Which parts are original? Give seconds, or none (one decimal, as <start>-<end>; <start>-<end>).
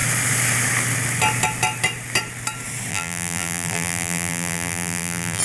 0.0-2.9